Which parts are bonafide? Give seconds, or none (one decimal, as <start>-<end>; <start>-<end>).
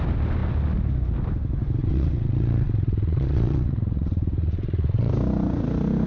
0.0-1.8; 5.1-6.1